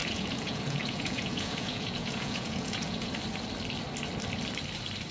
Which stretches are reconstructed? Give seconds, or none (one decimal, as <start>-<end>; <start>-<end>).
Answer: 0.0-3.1